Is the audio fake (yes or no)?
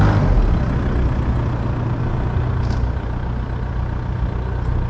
no